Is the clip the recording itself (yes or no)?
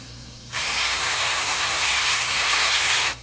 no